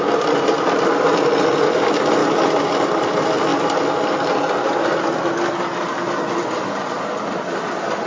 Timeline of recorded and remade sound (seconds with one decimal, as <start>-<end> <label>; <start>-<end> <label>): 0.0-8.1 recorded